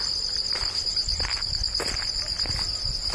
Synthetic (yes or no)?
no